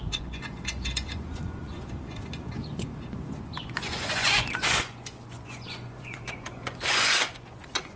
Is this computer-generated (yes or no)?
yes